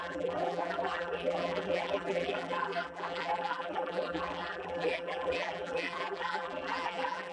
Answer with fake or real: fake